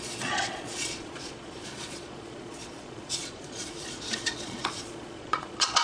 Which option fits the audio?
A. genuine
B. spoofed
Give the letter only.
B